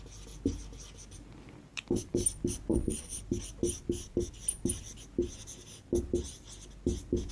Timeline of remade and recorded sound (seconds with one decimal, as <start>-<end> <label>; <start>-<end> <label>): 0.0-2.7 recorded; 2.7-3.2 remade; 3.2-7.3 recorded